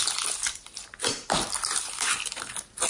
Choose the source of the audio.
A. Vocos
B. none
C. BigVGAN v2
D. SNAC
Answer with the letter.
B